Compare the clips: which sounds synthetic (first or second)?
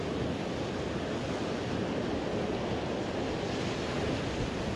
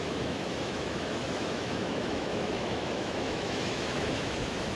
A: second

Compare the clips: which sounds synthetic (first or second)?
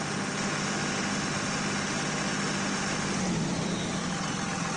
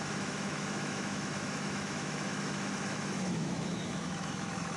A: second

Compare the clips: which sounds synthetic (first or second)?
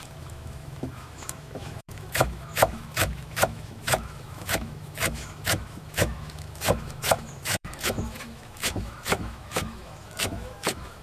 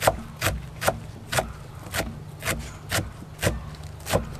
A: first